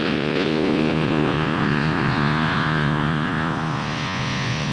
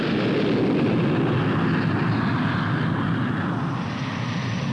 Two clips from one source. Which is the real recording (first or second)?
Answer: second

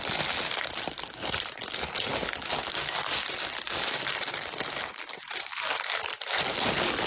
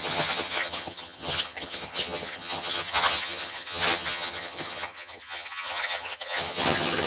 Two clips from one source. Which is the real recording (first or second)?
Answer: first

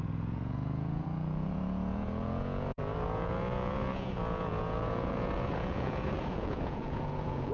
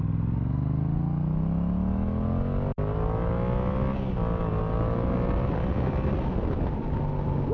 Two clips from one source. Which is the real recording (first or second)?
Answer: second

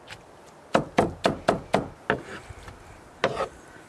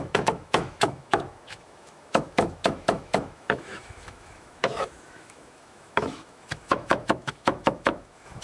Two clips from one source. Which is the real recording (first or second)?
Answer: first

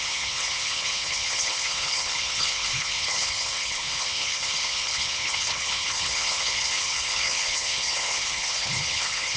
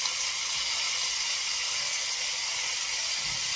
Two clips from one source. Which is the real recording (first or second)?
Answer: second